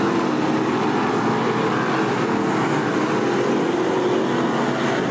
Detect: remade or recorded recorded